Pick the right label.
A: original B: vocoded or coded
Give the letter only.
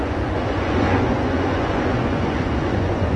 B